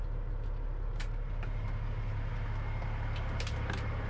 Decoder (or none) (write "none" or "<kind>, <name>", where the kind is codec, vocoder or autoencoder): none